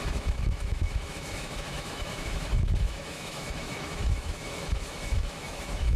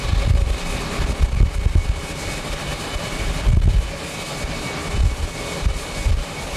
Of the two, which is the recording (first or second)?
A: second